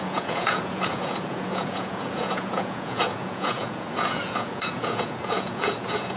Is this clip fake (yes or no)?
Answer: yes